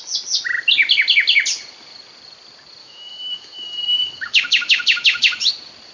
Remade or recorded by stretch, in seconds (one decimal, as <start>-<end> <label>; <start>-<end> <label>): 0.0-2.8 recorded; 2.8-5.5 remade; 5.5-5.9 recorded